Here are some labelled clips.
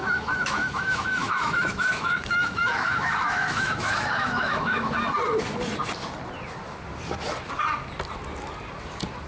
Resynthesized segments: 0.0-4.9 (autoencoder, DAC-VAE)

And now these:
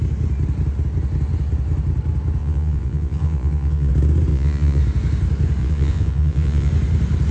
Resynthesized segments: 2.4-3.9 (vocoder, Vocos); 4.3-4.8; 5.6-6.7

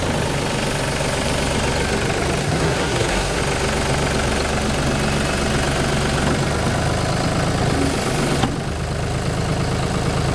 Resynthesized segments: 2.4-3.4 (codec, SNAC)

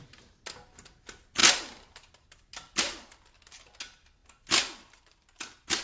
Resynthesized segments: none

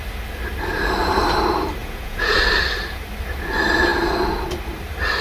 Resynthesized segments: 1.8-2.4 (vocoder, Vocos)